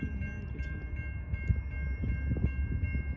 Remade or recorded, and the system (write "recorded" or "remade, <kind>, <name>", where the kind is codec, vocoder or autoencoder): recorded